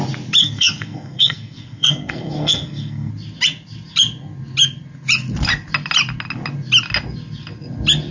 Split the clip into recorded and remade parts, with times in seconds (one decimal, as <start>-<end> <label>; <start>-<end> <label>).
0.0-0.4 recorded; 0.4-3.1 remade; 3.1-8.1 recorded